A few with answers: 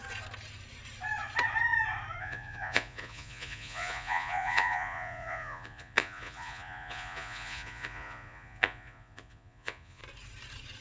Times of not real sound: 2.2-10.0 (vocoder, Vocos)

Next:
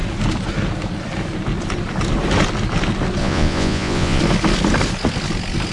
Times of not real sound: 3.2-4.2 (vocoder, Vocos)

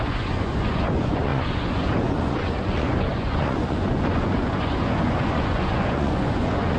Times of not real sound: 0.0-6.8 (vocoder, Vocos)

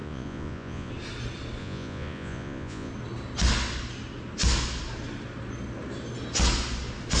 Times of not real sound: 0.0-0.9 (vocoder, Vocos); 1.6-2.9